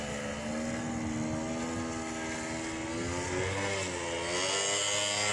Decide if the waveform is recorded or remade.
recorded